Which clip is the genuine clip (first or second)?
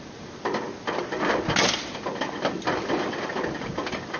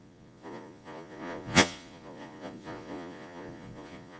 first